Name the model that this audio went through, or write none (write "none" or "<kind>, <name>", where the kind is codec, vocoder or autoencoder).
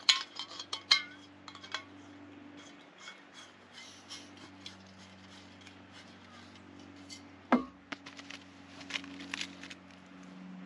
none